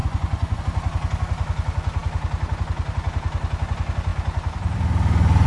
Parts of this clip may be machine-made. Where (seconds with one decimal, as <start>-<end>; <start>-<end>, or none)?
0.0-0.6